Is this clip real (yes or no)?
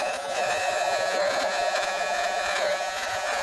no